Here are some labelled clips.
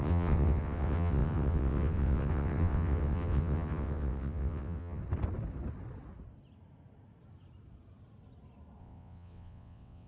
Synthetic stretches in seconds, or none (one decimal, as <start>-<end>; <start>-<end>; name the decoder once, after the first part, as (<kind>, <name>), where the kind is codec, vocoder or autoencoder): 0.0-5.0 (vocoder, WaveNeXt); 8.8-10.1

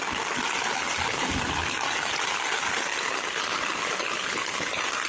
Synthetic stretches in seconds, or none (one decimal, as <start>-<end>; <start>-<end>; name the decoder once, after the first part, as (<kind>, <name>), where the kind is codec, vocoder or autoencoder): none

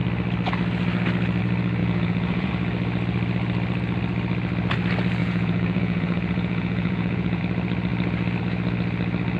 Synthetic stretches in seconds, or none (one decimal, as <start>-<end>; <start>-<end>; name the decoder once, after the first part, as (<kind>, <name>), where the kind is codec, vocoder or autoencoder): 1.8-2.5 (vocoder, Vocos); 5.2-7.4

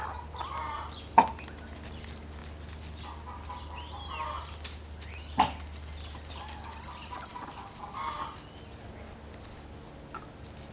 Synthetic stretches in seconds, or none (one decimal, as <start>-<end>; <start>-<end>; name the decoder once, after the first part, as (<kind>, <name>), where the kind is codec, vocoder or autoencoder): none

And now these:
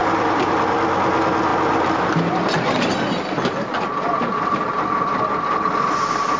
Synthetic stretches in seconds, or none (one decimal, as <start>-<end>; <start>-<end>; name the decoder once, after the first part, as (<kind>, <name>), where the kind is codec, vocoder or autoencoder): 0.0-0.8 (vocoder, BigVGAN v2)

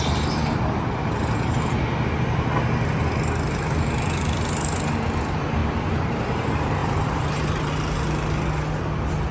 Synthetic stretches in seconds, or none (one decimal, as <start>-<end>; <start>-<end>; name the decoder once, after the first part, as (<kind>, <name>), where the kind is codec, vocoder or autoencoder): 1.0-2.6 (vocoder, BigVGAN v2); 5.6-6.2; 6.8-7.7

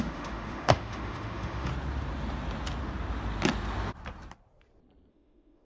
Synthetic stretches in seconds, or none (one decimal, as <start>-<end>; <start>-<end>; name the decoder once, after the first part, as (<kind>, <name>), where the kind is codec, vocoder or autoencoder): 0.0-1.7 (autoencoder, DAC-VAE); 5.1-5.6